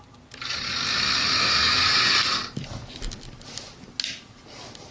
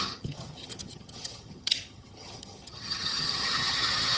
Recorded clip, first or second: first